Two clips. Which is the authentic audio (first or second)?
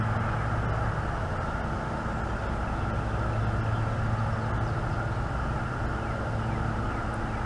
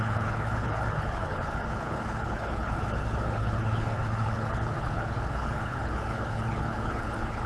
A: first